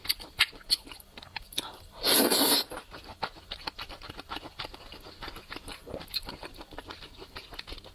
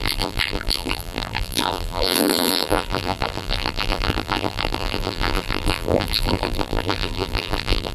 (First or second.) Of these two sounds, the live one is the first